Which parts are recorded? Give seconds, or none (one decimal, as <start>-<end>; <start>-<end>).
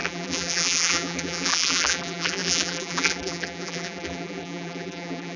none